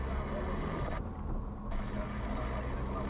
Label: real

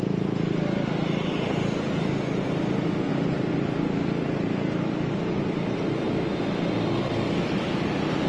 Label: real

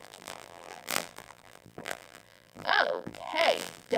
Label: fake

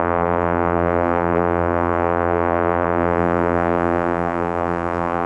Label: fake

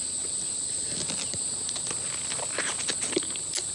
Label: real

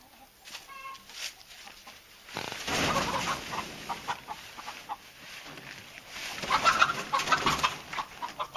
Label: real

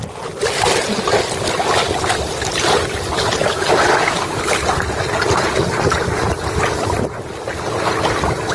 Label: real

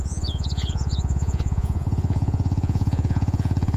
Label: fake